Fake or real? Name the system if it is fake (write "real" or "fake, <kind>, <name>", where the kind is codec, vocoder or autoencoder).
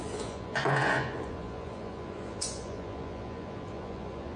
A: fake, vocoder, Vocos